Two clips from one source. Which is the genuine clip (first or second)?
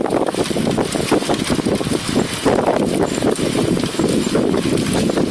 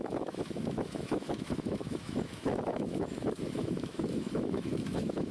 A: first